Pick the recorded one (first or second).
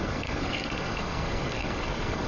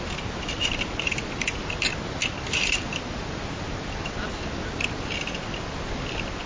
second